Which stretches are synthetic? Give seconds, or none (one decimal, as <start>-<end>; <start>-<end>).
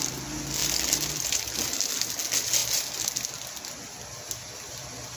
0.6-1.8